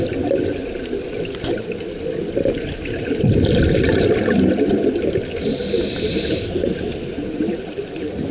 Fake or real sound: real